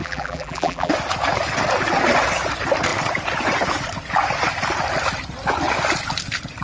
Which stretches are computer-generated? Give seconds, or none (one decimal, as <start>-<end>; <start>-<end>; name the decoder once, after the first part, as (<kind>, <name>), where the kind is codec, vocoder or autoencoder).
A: 0.0-0.9 (vocoder, BigVGAN v2)